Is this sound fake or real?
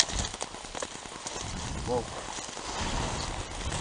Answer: real